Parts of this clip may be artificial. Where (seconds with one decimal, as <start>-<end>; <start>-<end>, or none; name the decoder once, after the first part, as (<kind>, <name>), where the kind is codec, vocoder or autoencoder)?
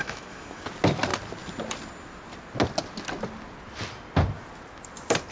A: 0.0-0.6 (autoencoder, DAC-VAE)